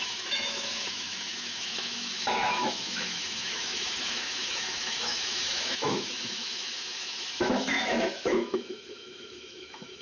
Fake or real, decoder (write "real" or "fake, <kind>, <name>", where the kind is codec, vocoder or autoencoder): fake, autoencoder, DAC-VAE